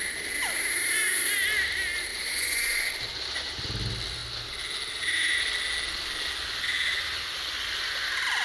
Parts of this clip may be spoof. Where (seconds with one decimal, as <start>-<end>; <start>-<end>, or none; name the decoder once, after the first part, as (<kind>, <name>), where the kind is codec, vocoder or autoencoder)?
2.1-2.9 (vocoder, Vocos)